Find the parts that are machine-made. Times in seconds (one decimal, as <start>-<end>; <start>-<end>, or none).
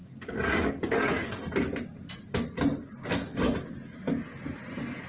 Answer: 0.0-1.3